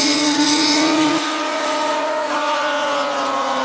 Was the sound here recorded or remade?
remade